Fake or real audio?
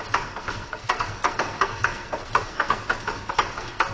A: fake